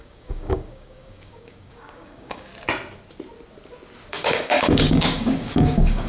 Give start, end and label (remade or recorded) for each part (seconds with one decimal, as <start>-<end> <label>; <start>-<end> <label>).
0.0-2.5 remade; 2.5-4.1 recorded; 4.1-6.1 remade